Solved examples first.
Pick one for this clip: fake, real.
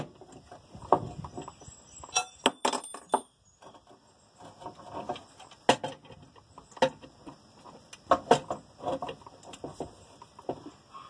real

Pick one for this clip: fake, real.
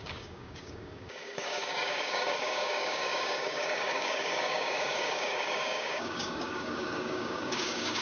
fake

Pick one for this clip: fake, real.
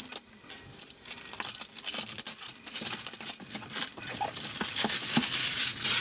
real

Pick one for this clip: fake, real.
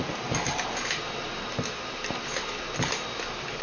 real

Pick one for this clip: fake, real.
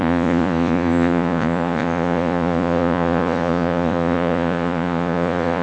fake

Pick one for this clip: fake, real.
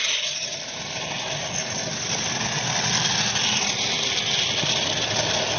real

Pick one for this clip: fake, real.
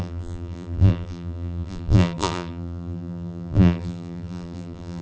fake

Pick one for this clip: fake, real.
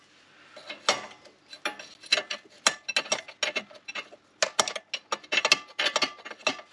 real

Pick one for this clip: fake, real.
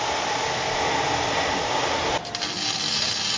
real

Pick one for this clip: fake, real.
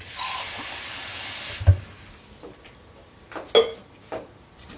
real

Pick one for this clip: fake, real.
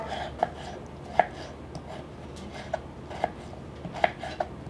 real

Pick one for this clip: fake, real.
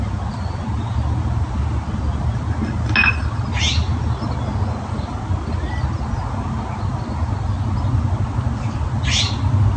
real